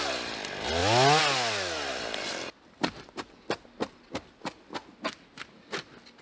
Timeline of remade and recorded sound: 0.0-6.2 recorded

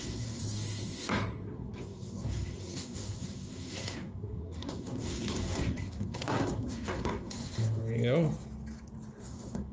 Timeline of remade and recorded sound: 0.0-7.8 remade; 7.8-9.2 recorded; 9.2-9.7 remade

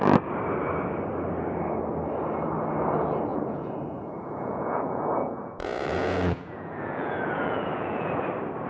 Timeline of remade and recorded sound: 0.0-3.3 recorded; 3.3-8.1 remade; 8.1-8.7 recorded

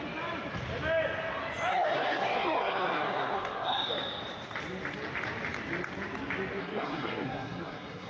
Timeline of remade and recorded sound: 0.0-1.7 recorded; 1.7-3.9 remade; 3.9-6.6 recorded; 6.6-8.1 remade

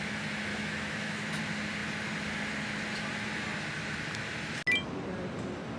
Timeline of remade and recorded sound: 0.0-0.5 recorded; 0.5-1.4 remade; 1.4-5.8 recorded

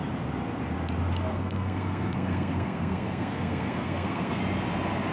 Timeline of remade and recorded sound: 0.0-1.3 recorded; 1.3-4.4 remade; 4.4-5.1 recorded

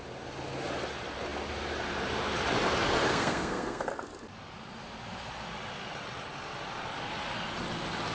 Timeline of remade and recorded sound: 0.0-3.1 recorded; 3.1-3.9 remade; 3.9-8.1 recorded